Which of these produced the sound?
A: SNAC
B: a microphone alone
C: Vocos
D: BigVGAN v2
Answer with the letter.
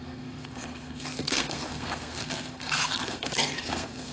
A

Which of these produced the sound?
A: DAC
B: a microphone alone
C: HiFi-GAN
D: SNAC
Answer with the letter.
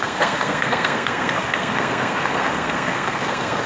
D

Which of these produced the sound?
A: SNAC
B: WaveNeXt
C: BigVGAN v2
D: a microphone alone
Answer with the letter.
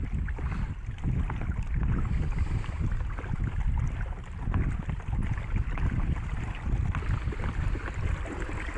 D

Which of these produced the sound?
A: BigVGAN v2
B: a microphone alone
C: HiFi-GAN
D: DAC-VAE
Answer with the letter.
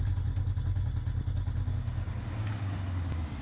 B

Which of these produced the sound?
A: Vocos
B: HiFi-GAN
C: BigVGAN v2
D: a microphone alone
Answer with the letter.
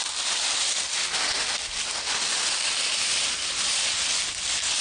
D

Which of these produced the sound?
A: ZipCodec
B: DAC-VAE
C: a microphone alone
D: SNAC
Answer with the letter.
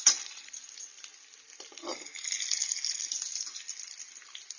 C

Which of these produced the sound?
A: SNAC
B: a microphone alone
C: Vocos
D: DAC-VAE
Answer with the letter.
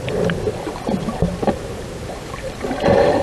B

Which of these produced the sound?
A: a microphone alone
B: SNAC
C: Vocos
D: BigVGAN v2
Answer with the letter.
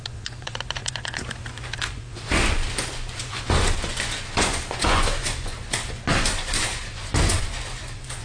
C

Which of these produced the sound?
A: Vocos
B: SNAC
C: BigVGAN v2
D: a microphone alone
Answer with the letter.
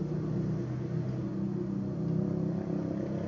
D